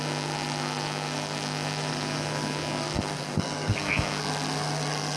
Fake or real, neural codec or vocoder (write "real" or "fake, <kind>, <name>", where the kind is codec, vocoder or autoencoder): fake, codec, SNAC